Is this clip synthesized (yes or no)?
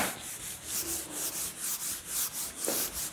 no